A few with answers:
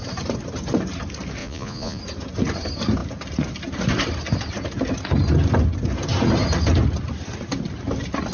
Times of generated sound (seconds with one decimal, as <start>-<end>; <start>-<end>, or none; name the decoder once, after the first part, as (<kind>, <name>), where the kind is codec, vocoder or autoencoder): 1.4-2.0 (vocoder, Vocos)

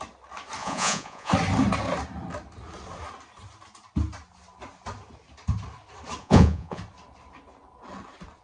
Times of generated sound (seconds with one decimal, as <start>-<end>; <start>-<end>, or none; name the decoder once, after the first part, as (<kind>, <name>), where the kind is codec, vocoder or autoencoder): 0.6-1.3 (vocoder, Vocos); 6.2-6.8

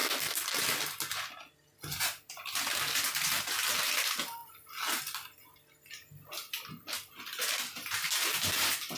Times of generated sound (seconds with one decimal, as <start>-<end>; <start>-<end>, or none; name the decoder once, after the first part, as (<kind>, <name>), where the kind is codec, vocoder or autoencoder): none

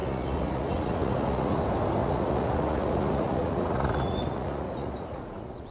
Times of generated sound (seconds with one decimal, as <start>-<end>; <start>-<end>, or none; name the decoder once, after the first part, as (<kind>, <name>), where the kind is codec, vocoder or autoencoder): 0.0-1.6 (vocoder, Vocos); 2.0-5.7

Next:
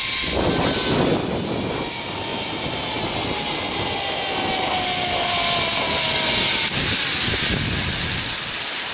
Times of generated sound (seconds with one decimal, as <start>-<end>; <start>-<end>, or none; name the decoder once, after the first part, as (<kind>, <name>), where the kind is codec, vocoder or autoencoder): none